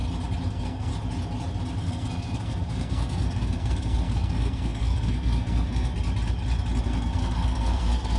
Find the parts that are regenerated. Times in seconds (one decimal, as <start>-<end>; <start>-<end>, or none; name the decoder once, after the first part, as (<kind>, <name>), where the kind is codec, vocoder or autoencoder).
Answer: 0.5-0.9 (codec, SNAC); 1.8-5.9; 6.8-8.2